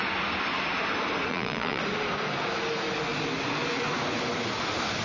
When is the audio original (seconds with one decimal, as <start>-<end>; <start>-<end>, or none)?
0.0-1.3; 1.8-5.0